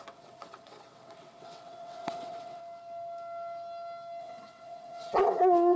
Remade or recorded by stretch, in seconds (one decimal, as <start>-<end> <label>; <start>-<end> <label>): 0.0-2.6 remade; 2.6-4.2 recorded; 4.2-5.8 remade